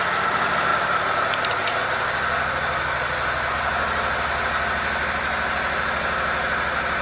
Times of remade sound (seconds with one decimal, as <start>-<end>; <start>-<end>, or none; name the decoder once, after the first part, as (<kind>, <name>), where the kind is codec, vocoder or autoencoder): none